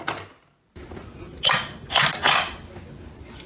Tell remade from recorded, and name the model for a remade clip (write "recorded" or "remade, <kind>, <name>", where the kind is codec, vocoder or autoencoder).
recorded